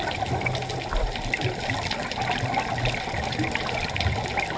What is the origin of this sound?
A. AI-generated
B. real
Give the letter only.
B